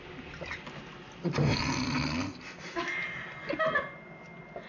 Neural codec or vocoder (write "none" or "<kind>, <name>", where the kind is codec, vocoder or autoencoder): none